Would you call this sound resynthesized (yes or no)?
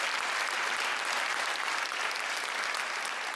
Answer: yes